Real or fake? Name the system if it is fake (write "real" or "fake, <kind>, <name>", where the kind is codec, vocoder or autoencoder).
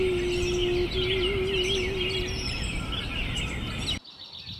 real